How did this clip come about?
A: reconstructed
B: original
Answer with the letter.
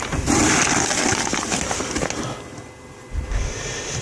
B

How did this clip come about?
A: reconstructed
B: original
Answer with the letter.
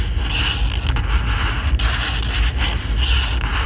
B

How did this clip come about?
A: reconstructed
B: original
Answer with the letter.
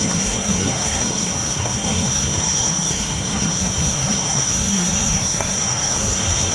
A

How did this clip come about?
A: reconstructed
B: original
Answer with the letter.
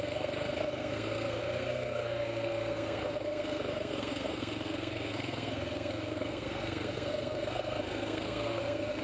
A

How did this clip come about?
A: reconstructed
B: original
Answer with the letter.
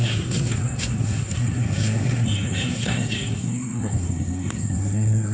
A